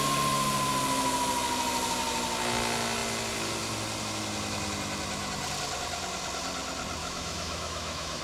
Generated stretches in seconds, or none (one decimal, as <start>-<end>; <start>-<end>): 7.0-8.2